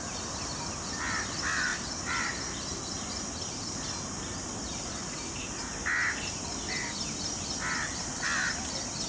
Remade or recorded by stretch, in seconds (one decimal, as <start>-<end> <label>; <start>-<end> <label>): 0.0-9.1 recorded

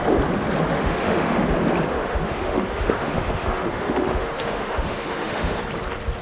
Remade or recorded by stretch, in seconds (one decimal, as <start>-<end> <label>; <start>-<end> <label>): 0.0-0.7 recorded; 0.7-1.5 remade; 1.5-1.9 recorded; 1.9-5.6 remade; 5.6-6.2 recorded